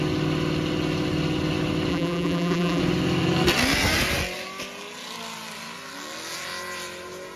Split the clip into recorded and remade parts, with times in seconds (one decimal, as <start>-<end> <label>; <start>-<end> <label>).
0.0-1.9 recorded; 1.9-2.8 remade; 2.8-7.4 recorded